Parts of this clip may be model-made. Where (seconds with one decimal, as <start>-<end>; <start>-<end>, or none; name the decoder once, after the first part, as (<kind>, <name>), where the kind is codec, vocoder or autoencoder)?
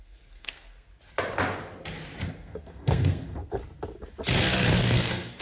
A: 0.0-0.9 (codec, SNAC); 2.3-3.6; 4.8-5.4